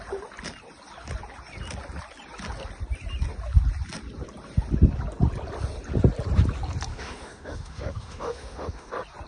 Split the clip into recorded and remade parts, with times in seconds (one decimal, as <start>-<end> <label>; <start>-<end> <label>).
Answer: 0.0-6.9 recorded; 6.9-8.9 remade; 8.9-9.3 recorded